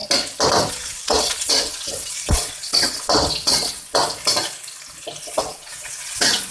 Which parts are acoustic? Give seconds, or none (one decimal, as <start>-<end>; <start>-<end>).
0.0-0.7; 4.0-5.2

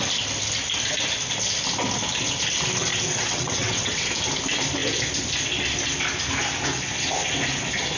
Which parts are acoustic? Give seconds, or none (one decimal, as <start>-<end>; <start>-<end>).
0.0-2.9; 4.1-8.0

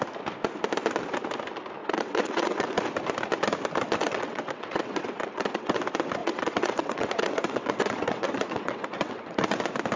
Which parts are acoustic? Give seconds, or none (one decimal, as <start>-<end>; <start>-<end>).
0.0-1.8; 2.8-4.0; 5.8-6.2; 9.6-10.0